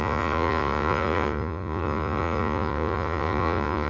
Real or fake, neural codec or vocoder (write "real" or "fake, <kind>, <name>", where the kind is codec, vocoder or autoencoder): fake, vocoder, Vocos